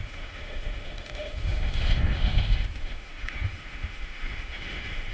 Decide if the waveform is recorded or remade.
remade